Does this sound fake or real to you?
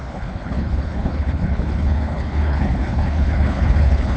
fake